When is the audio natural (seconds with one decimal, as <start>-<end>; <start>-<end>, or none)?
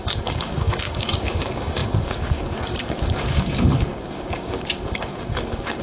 none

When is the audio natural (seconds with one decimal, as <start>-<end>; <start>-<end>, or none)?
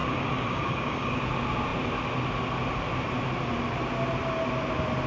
1.2-5.1